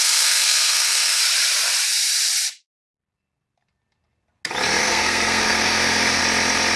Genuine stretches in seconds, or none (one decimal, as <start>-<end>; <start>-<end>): 1.2-4.8; 6.2-6.8